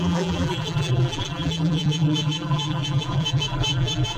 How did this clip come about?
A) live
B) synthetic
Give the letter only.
B